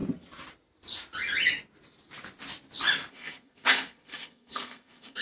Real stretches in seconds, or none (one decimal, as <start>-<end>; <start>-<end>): 0.0-3.1